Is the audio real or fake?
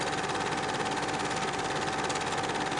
real